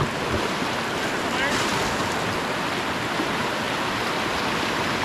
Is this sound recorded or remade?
recorded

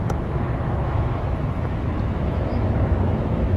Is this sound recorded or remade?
remade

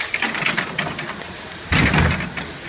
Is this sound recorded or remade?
recorded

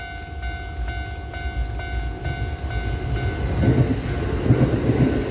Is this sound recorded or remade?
recorded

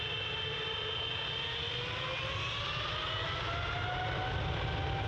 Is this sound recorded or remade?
recorded